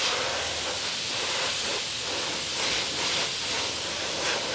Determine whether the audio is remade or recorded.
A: recorded